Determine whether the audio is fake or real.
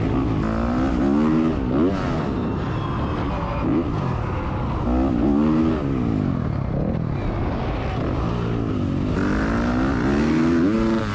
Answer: real